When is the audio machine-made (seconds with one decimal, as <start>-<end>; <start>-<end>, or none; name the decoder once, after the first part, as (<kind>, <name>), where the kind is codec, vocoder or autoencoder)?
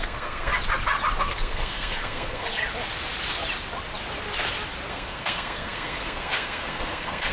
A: 0.0-0.5 (codec, SNAC); 1.2-2.6; 4.9-7.3